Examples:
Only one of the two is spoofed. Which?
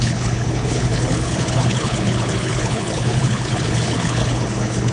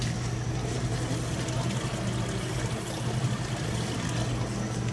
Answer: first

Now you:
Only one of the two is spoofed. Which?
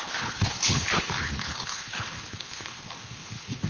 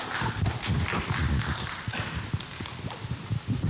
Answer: first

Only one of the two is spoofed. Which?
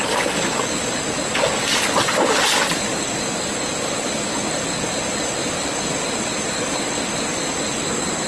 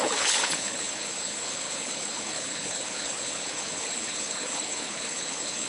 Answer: second